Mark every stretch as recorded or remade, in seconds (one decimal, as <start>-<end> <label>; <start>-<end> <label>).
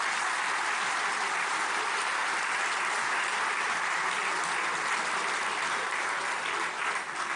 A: 0.0-7.4 recorded